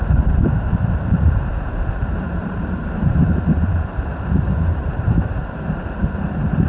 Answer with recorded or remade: remade